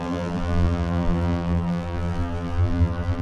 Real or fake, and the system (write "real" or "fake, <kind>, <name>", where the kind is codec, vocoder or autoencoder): fake, vocoder, BigVGAN v2